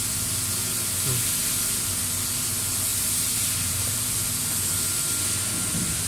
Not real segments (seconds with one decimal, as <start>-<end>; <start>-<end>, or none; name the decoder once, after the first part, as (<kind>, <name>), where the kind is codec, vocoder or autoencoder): 2.9-3.9 (vocoder, BigVGAN v2)